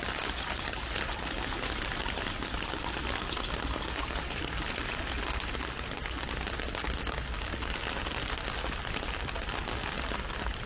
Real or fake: real